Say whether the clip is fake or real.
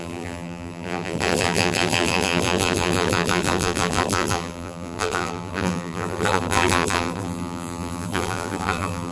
fake